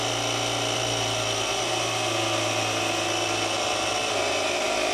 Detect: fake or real real